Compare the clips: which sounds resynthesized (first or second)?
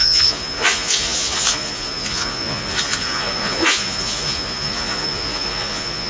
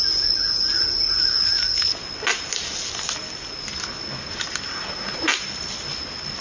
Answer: first